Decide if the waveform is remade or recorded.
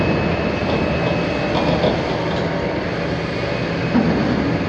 recorded